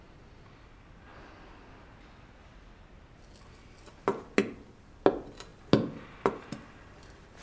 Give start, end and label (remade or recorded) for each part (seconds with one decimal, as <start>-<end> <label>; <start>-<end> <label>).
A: 0.0-7.4 recorded